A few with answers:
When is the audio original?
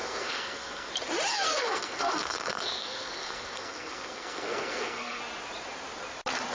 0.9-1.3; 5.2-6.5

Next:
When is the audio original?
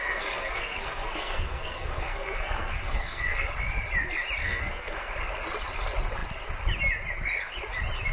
3.5-4.4; 5.1-8.1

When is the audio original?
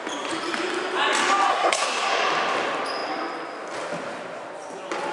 0.0-1.5; 2.1-5.1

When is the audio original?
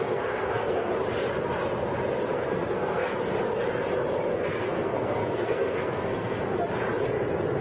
0.9-2.3; 3.1-4.3; 6.4-7.6